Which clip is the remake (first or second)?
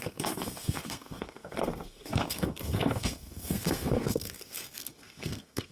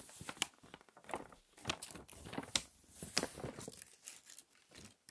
first